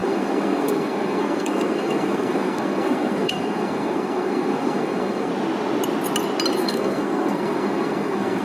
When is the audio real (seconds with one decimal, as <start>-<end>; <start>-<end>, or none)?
5.3-6.6